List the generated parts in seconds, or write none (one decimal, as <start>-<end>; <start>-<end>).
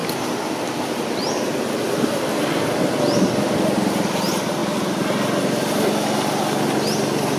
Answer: none